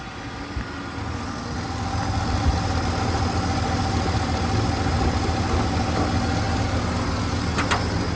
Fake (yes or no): no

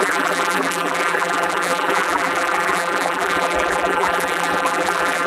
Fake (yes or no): yes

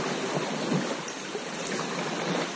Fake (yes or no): no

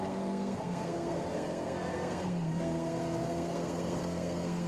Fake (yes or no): yes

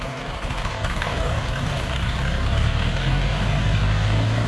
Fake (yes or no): yes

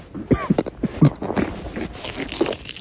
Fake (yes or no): no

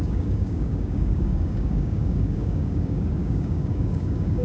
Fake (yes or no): yes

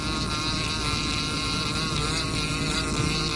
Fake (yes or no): no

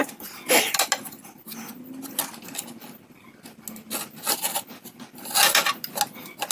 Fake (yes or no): no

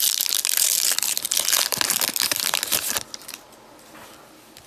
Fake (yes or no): no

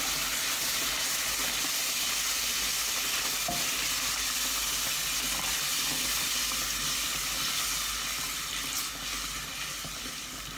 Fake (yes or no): no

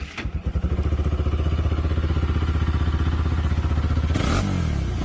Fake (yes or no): no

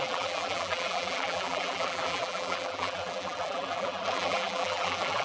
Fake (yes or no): yes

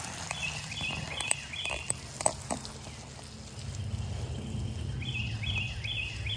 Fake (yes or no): no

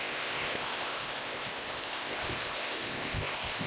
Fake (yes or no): yes